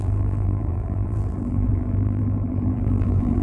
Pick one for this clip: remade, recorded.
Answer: remade